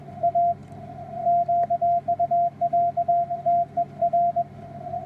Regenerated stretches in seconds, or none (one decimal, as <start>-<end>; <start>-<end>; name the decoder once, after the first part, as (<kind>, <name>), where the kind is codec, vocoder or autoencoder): none